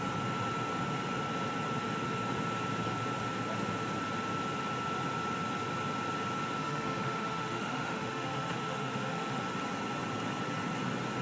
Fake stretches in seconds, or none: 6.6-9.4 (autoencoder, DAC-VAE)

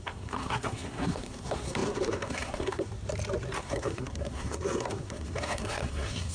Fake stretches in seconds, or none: 0.0-2.9 (codec, SNAC); 3.6-6.3

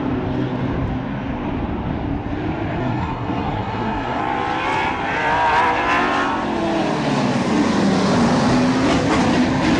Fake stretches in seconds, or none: 2.8-4.2 (codec, SNAC)

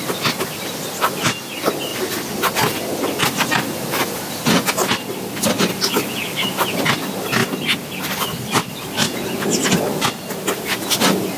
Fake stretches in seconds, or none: none

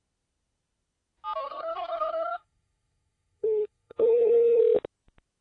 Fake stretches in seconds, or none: 1.4-4.6 (codec, SNAC)

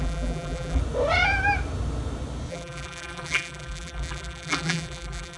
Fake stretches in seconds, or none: 0.0-0.8 (vocoder, BigVGAN v2); 2.5-5.4

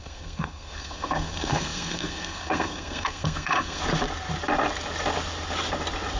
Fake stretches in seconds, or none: 0.0-3.8 (codec, SNAC)

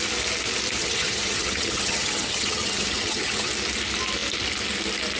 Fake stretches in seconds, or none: 0.8-3.5 (vocoder, HiFi-GAN)